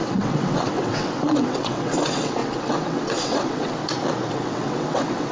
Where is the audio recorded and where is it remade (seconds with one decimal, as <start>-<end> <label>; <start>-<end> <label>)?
0.0-3.8 remade; 3.8-4.3 recorded; 4.3-5.3 remade